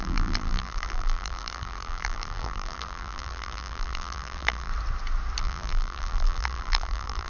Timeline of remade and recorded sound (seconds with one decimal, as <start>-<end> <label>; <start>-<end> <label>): 0.0-4.7 remade; 4.7-5.4 recorded; 5.4-7.3 remade